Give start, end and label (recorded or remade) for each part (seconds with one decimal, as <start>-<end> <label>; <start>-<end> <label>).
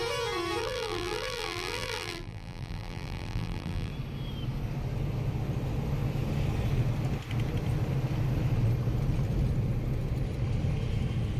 0.0-0.6 recorded; 0.6-3.9 remade; 3.9-11.4 recorded